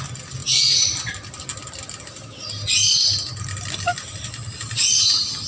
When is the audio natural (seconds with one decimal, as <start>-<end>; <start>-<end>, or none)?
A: 0.0-5.5